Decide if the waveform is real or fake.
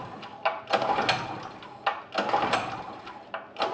real